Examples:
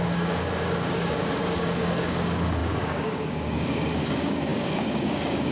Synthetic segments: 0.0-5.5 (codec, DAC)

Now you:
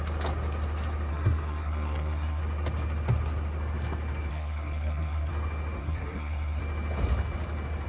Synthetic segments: 1.1-2.4 (codec, SNAC); 4.3-5.3; 5.8-6.6